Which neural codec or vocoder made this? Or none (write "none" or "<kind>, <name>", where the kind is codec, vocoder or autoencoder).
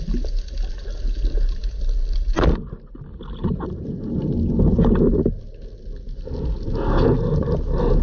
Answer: none